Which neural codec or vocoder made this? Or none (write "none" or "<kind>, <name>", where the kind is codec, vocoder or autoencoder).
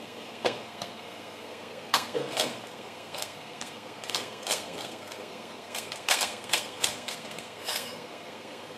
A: codec, SNAC